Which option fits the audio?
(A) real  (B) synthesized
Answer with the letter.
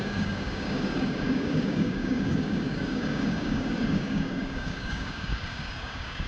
B